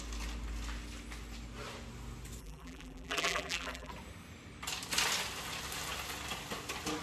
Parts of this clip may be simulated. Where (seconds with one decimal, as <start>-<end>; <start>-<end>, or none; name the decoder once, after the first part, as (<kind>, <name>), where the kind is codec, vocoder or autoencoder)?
2.4-3.9 (vocoder, BigVGAN v2)